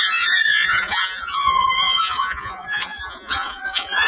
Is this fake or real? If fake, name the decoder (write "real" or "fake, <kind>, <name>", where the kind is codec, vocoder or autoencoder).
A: fake, vocoder, Vocos